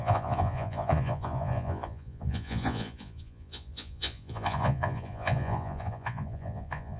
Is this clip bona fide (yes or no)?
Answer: no